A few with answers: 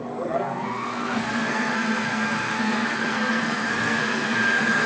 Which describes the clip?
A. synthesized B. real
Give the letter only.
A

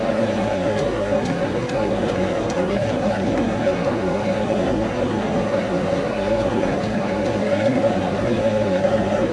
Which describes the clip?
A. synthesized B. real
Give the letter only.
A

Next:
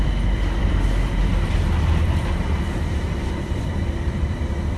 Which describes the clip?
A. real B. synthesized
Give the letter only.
B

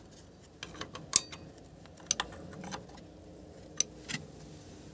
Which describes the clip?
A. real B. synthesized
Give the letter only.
A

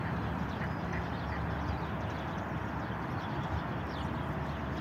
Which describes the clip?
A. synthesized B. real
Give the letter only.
B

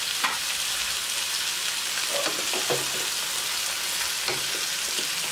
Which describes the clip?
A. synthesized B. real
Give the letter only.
B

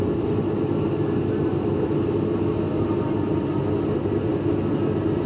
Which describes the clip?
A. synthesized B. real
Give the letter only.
B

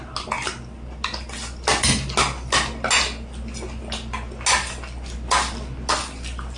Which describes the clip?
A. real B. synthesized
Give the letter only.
A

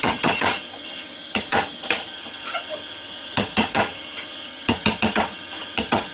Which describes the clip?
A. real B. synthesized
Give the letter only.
B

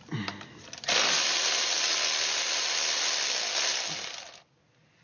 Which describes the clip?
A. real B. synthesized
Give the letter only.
A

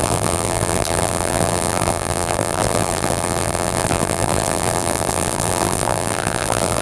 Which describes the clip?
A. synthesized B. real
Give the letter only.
A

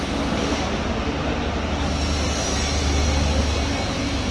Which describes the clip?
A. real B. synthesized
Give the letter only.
A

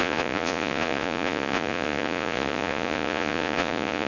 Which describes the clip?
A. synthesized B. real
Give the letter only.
A